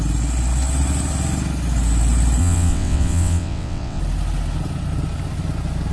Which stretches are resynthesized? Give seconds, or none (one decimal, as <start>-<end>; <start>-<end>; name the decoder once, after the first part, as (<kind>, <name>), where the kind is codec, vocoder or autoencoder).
2.4-4.0 (vocoder, WaveNeXt)